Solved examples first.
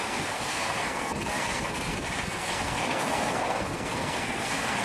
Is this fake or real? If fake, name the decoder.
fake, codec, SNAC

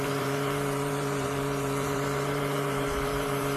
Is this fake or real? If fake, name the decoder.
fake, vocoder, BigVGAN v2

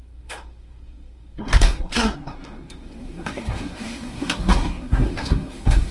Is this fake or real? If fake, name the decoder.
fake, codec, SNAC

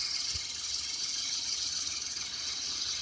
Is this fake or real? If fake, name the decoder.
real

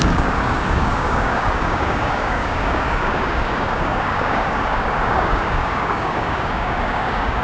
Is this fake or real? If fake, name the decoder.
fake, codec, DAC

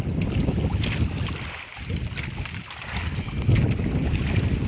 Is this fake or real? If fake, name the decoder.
real